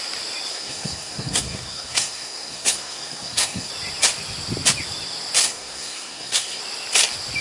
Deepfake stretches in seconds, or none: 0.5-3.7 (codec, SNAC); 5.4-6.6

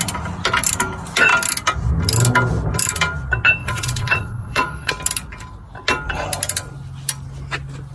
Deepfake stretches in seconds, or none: 3.6-4.9 (vocoder, Vocos)

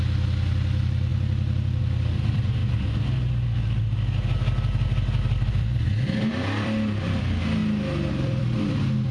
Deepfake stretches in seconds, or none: 0.0-1.1 (vocoder, BigVGAN v2); 1.8-2.6; 5.5-7.6; 8.1-9.1

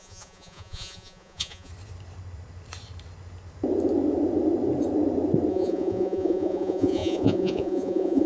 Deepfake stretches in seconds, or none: 0.0-1.7 (vocoder, Vocos); 5.5-8.3